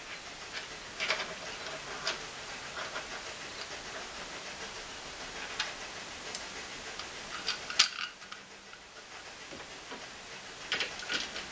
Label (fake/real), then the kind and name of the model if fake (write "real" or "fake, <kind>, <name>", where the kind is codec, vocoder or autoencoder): real